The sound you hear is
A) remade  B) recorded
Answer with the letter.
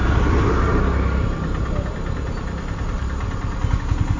B